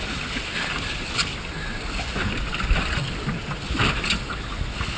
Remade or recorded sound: recorded